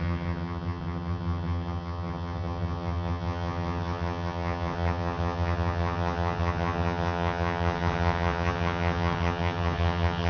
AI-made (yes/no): yes